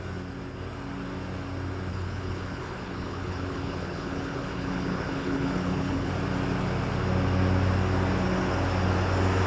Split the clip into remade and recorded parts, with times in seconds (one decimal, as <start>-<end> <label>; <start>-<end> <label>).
0.0-1.9 recorded; 1.9-6.1 remade; 6.1-9.5 recorded